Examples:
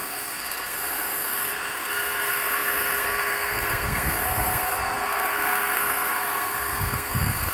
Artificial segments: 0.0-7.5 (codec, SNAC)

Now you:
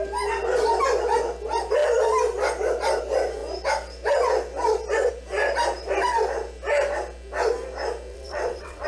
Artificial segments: 8.1-8.9 (vocoder, WaveNeXt)

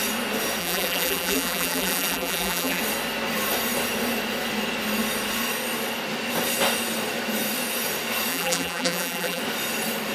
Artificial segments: 0.6-2.8 (vocoder, BigVGAN v2); 8.3-9.4